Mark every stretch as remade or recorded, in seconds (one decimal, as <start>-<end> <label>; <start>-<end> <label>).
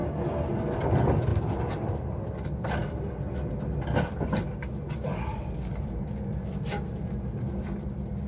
0.0-1.3 recorded; 1.3-2.1 remade; 2.1-8.3 recorded